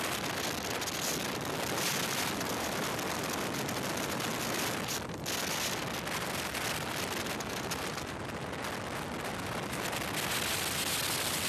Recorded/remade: recorded